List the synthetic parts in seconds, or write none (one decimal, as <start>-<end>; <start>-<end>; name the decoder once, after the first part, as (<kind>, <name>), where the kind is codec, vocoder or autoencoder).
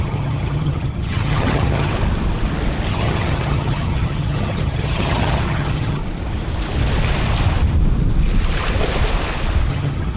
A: 0.0-1.9 (vocoder, HiFi-GAN); 2.9-6.0; 9.7-10.2